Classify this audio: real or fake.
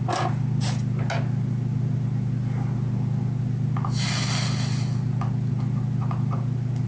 real